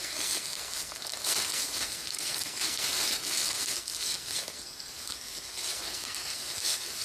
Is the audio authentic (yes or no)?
no